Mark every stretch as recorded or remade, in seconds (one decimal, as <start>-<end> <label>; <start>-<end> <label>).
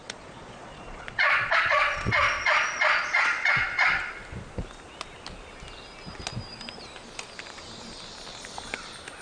0.0-4.1 remade; 4.1-9.2 recorded